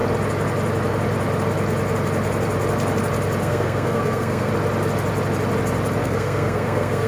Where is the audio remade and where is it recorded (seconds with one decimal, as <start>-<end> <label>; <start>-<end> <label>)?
0.0-3.4 recorded; 3.4-4.5 remade; 4.5-6.0 recorded; 6.0-7.1 remade